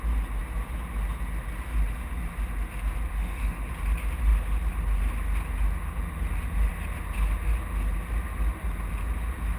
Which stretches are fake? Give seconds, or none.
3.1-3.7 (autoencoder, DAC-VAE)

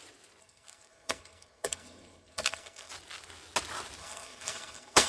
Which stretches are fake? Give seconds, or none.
0.4-2.9 (codec, SNAC); 4.0-5.1

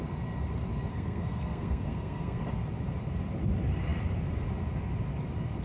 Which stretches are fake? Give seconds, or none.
0.9-2.4 (codec, SNAC)

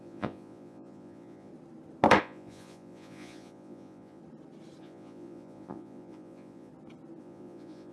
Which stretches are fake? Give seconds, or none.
0.0-1.5 (vocoder, Vocos); 2.2-4.2; 4.8-6.7; 7.2-7.9

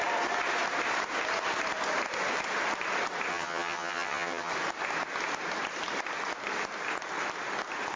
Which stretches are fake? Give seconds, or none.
3.3-4.5 (vocoder, HiFi-GAN)

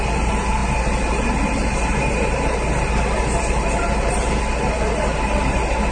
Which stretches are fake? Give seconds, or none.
none

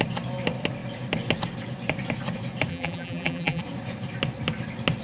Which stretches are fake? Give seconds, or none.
2.7-3.6 (vocoder, BigVGAN v2)

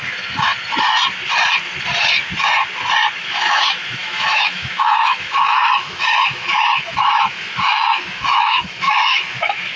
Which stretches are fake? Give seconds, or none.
0.0-0.5 (autoencoder, DAC-VAE); 3.2-9.8